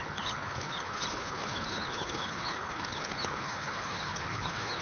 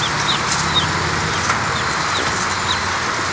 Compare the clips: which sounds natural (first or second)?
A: second